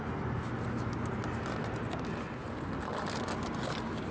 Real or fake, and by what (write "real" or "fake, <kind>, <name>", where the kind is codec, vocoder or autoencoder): real